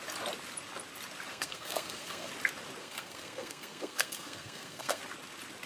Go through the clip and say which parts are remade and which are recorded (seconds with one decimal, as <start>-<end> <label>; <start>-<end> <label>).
0.0-1.3 recorded; 1.3-2.3 remade; 2.3-2.8 recorded; 2.8-5.0 remade; 5.0-5.7 recorded

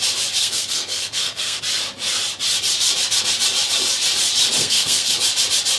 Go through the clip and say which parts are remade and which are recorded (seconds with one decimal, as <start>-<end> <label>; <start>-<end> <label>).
0.0-0.4 recorded; 0.4-1.6 remade; 1.6-4.6 recorded; 4.6-5.1 remade; 5.1-5.8 recorded

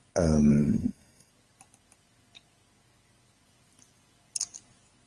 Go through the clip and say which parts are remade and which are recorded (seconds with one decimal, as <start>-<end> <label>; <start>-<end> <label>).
0.0-0.5 recorded; 0.5-1.3 remade; 1.3-5.1 recorded

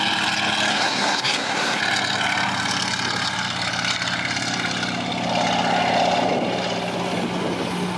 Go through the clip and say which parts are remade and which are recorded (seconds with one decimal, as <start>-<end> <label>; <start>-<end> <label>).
0.0-0.7 recorded; 0.7-1.8 remade; 1.8-8.0 recorded

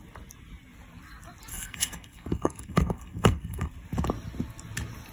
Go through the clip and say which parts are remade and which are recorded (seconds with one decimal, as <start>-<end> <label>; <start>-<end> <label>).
0.0-1.5 recorded; 1.5-3.7 remade; 3.7-5.1 recorded

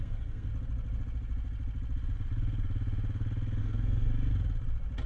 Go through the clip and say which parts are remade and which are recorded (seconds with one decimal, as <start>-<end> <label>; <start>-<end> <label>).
0.0-0.5 remade; 0.5-3.6 recorded; 3.6-4.1 remade; 4.1-5.1 recorded

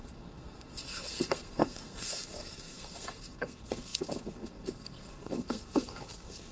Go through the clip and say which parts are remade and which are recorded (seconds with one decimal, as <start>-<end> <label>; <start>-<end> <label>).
0.0-6.5 remade